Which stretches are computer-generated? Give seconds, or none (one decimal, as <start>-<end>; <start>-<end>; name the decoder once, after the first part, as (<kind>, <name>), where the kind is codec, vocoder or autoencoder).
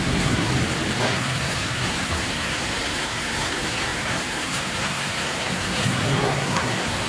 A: 0.0-0.5 (codec, SNAC); 1.0-7.1